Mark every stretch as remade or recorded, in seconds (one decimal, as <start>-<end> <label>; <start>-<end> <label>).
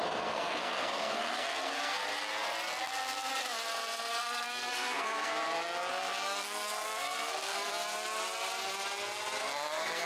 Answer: 0.0-2.0 remade; 2.0-4.1 recorded; 4.1-5.3 remade; 5.3-5.9 recorded; 5.9-7.7 remade; 7.7-9.4 recorded; 9.4-10.1 remade